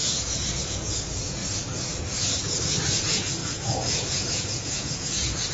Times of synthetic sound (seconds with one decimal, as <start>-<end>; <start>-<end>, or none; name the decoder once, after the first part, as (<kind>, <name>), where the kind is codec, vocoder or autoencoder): 0.0-1.4 (vocoder, Vocos); 2.2-5.5

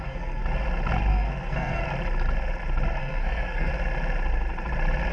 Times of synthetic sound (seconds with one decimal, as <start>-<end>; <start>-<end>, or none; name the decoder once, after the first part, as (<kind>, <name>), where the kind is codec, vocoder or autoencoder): 0.0-0.4 (codec, SNAC); 1.1-1.8; 3.0-3.7

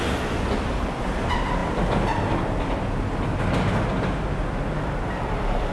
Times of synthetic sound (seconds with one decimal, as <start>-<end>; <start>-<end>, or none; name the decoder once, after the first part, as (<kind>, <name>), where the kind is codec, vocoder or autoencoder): 0.0-1.6 (vocoder, BigVGAN v2); 5.0-5.7

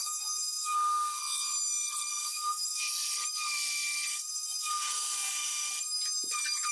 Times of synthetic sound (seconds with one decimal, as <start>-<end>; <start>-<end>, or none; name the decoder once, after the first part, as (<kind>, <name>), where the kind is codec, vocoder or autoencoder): 0.0-1.2 (codec, SNAC); 2.1-2.8; 4.1-5.7

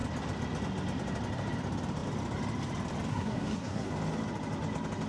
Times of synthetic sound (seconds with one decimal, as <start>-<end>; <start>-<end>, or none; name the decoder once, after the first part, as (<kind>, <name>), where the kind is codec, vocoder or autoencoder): 3.1-3.9 (codec, SNAC)